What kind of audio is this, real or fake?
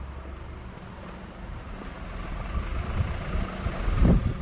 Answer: real